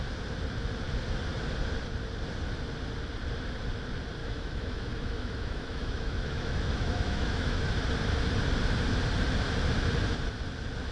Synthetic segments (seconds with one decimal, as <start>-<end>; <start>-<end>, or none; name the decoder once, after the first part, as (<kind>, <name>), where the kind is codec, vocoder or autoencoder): 4.2-7.7 (autoencoder, DAC-VAE)